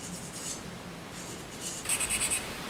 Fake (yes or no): yes